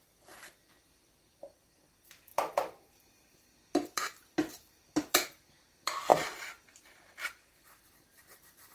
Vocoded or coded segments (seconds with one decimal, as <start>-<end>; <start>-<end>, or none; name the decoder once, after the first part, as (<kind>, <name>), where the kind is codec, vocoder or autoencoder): 0.0-8.7 (vocoder, BigVGAN v2)